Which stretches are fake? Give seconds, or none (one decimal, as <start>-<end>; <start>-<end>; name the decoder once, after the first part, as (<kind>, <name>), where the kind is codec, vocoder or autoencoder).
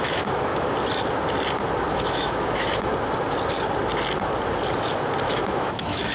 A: 0.0-0.5 (autoencoder, DAC-VAE); 1.9-2.9; 5.3-6.1